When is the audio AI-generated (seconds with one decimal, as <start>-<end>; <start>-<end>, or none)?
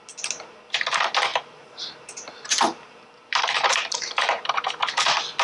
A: 1.3-4.5